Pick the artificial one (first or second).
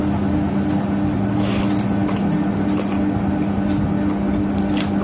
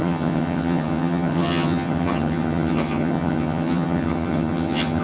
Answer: second